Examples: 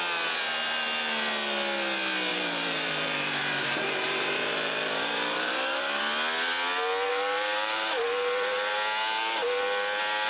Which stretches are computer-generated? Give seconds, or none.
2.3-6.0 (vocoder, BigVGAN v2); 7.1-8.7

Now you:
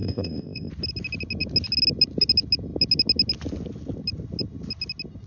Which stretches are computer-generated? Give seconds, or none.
0.0-0.7 (codec, ZipCodec)

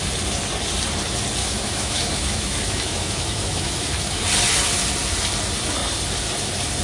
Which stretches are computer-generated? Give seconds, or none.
1.4-4.2 (autoencoder, DAC-VAE)

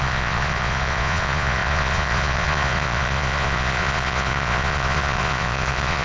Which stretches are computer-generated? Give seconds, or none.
0.0-6.0 (vocoder, Vocos)

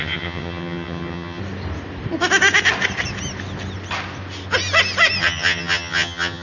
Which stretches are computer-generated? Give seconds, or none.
0.0-1.4 (vocoder, HiFi-GAN); 5.2-6.4

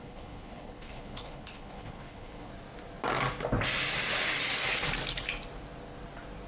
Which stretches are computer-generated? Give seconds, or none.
0.0-2.5 (codec, HILCodec)

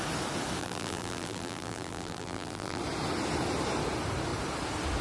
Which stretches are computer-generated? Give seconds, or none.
0.6-2.8 (vocoder, BigVGAN v2)

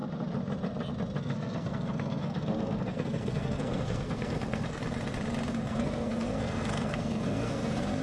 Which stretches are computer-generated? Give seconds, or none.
1.2-4.8 (codec, SNAC); 5.5-8.0